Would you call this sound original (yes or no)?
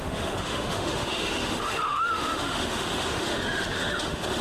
no